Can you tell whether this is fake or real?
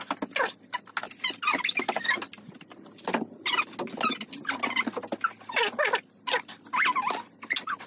real